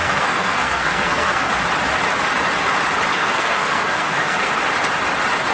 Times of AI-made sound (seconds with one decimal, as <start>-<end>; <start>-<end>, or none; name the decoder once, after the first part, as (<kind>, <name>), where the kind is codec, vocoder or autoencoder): 0.0-1.5 (codec, SNAC); 3.1-4.5